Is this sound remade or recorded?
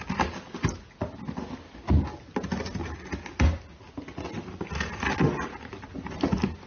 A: recorded